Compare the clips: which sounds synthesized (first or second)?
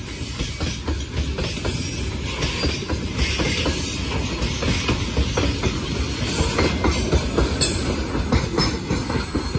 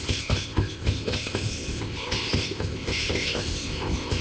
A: second